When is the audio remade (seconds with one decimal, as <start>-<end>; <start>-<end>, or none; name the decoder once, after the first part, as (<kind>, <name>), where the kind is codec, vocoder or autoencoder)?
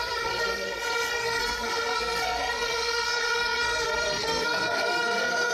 0.0-5.5 (codec, SNAC)